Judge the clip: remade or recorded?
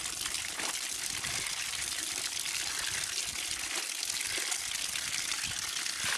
recorded